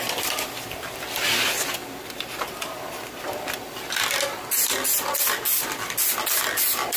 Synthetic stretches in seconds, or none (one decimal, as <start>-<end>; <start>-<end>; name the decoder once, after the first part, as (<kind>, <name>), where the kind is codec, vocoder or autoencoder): none